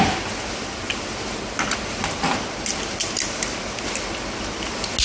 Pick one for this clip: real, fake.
real